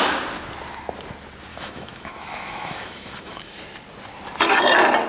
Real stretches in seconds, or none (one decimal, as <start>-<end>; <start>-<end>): 0.0-1.5; 3.6-5.1